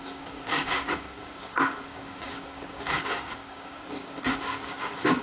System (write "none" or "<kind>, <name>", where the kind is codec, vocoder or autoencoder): codec, DAC